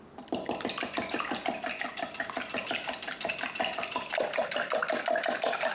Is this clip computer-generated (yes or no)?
no